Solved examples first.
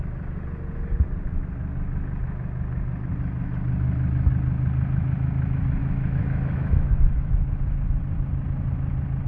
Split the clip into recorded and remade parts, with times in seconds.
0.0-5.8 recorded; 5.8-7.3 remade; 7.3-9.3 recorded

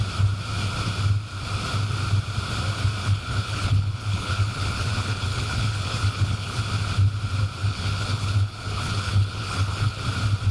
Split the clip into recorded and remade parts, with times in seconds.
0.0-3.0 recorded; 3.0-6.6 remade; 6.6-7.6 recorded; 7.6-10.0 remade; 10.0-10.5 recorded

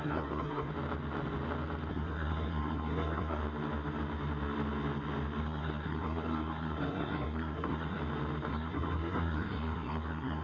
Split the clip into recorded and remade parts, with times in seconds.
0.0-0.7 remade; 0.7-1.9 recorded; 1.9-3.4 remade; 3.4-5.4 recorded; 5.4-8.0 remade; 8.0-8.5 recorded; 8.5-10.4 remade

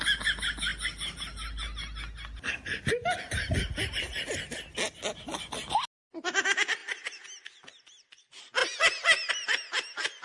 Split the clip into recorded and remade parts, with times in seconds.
0.0-10.2 recorded

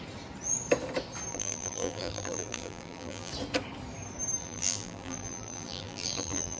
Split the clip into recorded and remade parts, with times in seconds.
0.0-1.3 recorded; 1.3-3.3 remade; 3.3-4.4 recorded; 4.4-6.6 remade